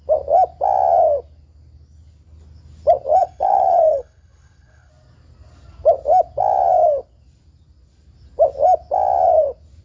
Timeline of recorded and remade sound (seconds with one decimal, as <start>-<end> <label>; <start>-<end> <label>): 0.0-3.2 recorded; 3.2-4.9 remade; 4.9-9.8 recorded